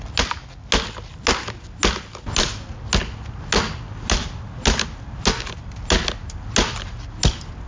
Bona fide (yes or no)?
yes